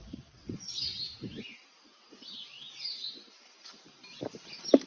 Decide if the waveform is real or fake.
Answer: fake